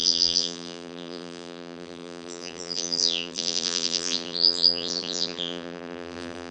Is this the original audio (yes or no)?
no